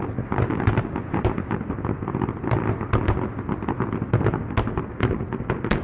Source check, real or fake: real